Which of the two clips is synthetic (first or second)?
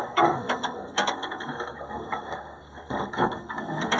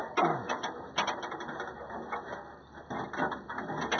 first